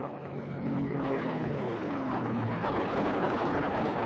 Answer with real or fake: fake